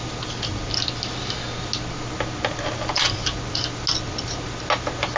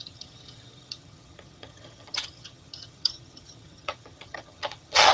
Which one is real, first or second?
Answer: first